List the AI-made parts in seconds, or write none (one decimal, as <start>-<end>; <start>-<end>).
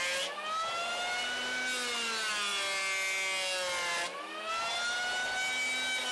none